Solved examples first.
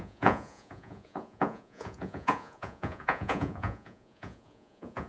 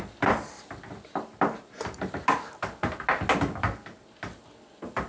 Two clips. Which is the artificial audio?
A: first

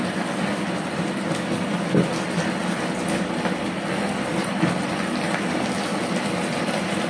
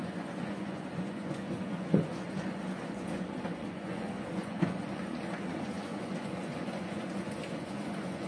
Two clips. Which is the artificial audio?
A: second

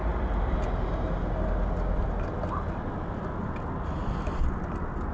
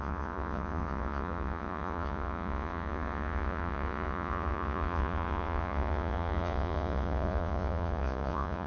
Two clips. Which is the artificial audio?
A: second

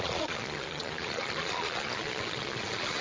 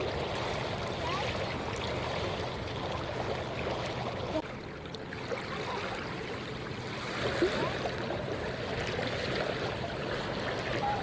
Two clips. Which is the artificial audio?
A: first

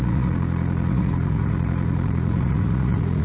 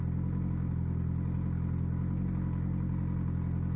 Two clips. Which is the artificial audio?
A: first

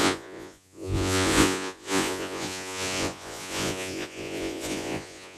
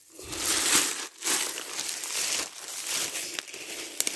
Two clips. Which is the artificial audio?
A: first